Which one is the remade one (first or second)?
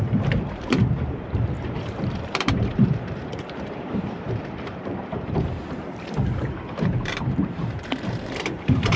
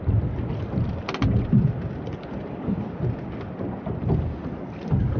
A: first